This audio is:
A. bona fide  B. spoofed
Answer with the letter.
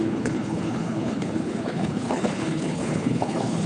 B